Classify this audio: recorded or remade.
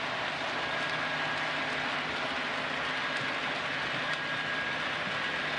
recorded